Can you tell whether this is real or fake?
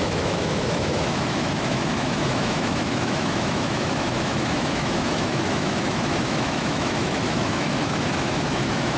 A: fake